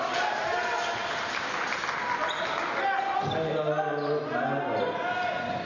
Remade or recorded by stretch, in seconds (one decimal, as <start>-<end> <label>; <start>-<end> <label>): 0.0-5.7 recorded